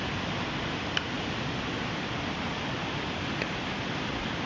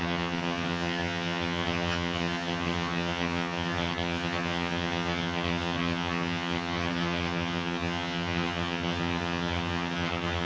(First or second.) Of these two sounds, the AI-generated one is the second